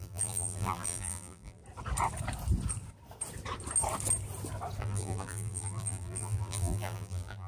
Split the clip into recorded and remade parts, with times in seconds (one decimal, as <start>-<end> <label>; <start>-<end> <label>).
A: 0.0-1.6 remade; 1.6-4.8 recorded; 4.8-7.5 remade